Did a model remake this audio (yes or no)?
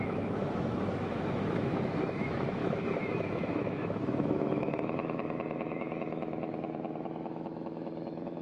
yes